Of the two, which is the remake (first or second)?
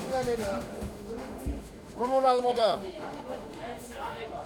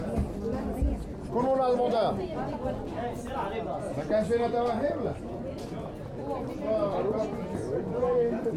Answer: first